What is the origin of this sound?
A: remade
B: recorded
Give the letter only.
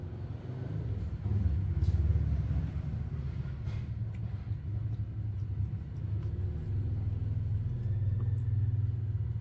B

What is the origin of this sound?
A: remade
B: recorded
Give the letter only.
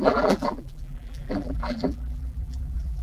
A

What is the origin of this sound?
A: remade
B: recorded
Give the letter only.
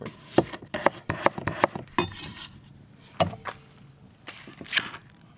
B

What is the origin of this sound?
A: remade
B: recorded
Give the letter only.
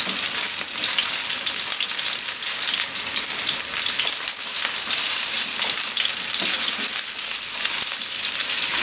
B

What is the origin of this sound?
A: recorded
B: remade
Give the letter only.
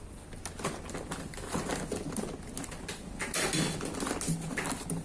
A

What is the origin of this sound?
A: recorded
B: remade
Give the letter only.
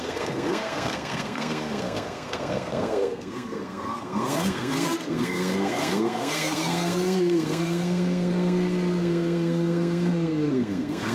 B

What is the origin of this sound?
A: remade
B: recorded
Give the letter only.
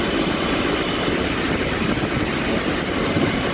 B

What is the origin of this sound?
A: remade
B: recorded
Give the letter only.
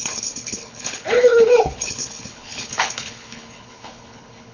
A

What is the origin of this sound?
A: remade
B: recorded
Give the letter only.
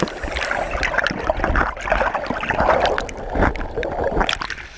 B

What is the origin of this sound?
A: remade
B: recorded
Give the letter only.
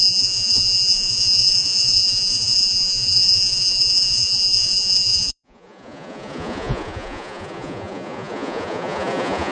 A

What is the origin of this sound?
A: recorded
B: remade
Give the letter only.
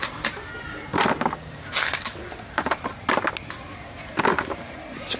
A